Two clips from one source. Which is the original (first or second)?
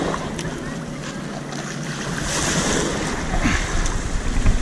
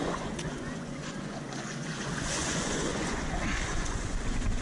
first